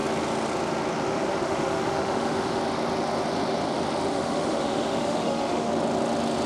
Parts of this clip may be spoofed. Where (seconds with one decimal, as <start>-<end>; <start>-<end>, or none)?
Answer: 1.0-2.6; 4.1-5.7